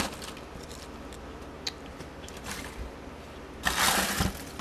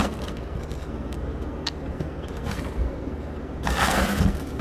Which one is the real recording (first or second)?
first